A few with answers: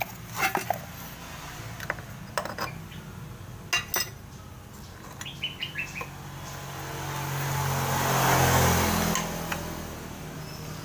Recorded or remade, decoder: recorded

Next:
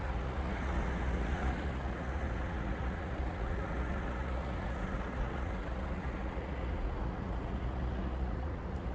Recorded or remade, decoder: remade, vocoder, Vocos